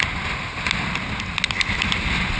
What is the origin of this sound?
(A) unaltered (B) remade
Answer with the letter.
A